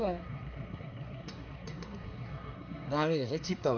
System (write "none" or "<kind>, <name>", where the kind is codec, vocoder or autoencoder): codec, SNAC